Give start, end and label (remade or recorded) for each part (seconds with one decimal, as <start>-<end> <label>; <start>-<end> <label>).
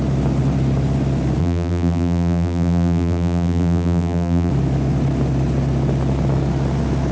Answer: 0.0-1.4 recorded; 1.4-4.5 remade; 4.5-7.1 recorded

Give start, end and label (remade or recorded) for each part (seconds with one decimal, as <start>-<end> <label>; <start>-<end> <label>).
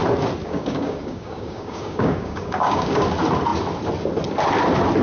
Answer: 0.0-0.4 recorded; 0.4-3.0 remade; 3.0-5.0 recorded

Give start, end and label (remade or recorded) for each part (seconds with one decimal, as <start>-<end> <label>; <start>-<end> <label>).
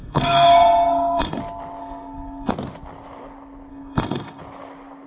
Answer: 0.0-1.4 remade; 1.4-1.8 recorded; 1.8-2.5 remade; 2.5-3.7 recorded; 3.7-4.4 remade; 4.4-5.1 recorded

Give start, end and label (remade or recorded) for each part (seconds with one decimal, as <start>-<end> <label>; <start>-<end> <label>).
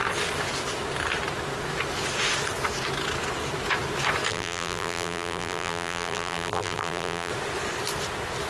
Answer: 0.0-4.3 recorded; 4.3-7.3 remade; 7.3-8.5 recorded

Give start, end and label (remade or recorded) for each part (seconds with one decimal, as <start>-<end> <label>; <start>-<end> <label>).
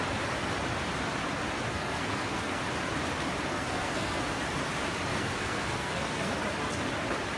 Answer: 0.0-1.7 recorded; 1.7-2.6 remade; 2.6-3.5 recorded; 3.5-4.2 remade; 4.2-5.1 recorded; 5.1-6.4 remade; 6.4-7.4 recorded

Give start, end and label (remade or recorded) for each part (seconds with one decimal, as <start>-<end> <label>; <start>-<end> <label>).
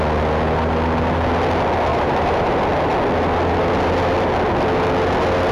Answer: 0.0-1.9 recorded; 1.9-2.5 remade; 2.5-5.5 recorded